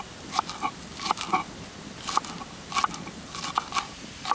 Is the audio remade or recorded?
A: recorded